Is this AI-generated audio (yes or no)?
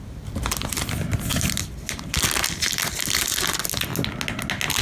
no